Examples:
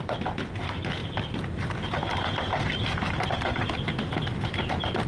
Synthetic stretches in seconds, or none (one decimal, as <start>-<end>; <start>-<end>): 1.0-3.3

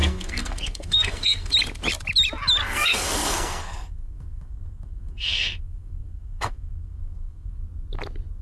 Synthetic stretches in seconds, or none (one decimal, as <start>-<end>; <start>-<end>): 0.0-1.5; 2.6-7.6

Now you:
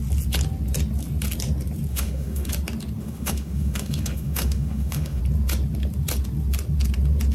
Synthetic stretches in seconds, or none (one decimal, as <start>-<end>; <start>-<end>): 1.9-2.5; 3.0-5.2